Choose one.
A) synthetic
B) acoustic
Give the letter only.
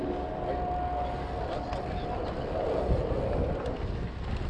B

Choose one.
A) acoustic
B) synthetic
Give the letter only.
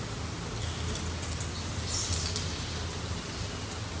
A